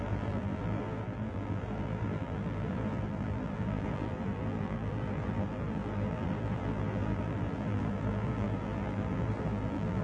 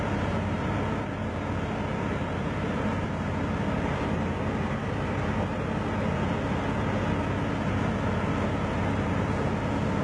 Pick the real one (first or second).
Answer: second